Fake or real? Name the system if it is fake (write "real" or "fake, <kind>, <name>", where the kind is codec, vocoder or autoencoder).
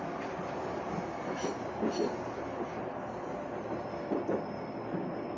real